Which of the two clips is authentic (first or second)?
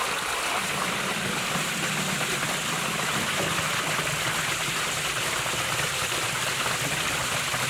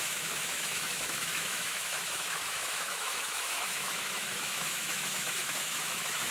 first